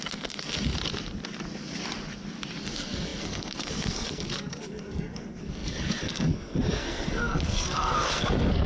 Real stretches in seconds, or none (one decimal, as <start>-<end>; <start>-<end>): 0.7-2.6